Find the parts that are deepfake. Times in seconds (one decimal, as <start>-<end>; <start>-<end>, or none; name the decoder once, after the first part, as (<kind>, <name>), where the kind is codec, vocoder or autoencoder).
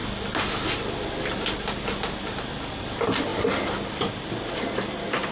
none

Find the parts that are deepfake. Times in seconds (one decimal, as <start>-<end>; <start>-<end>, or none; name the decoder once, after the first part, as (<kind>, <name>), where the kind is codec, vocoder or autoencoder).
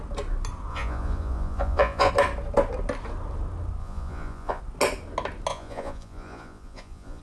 0.7-2.1 (vocoder, Vocos); 3.8-4.6; 5.5-7.2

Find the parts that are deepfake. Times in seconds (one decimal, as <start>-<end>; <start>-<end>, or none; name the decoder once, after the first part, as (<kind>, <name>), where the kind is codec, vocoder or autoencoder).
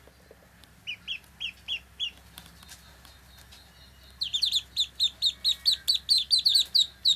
none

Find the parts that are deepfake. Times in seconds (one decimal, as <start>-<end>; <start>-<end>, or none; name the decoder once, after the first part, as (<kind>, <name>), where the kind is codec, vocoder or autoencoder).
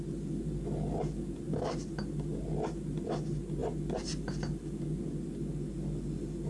none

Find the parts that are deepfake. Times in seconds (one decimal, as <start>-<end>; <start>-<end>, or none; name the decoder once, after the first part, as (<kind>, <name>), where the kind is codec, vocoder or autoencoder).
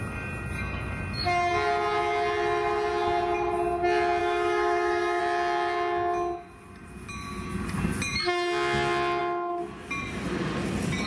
4.2-5.2 (autoencoder, DAC-VAE)